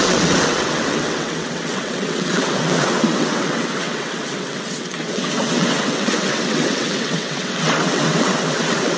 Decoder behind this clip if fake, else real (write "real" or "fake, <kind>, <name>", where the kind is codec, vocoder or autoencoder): fake, vocoder, WaveNeXt